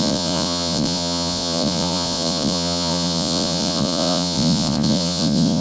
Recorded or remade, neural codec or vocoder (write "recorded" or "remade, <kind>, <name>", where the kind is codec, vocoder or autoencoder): remade, vocoder, Vocos